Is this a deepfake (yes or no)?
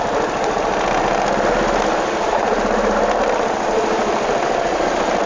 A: no